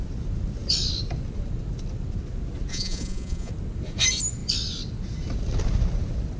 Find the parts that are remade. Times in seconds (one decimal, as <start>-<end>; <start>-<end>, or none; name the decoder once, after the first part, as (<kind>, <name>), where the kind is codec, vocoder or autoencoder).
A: 2.7-3.5 (vocoder, Vocos)